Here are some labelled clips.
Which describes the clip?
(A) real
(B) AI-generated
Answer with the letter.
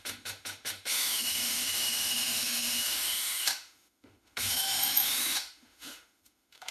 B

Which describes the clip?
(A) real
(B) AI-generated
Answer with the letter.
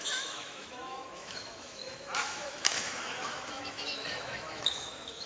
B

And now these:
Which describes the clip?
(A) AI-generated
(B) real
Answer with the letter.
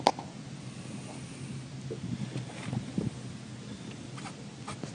B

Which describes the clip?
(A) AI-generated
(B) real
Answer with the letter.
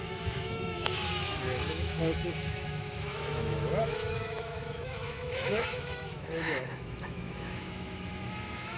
A